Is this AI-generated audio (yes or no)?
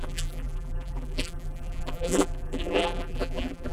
yes